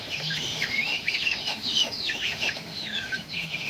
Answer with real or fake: fake